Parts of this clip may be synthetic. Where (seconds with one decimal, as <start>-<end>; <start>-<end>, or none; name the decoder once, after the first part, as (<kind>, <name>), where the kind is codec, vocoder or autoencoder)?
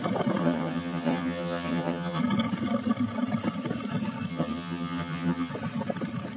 0.4-2.2 (vocoder, HiFi-GAN); 4.3-5.5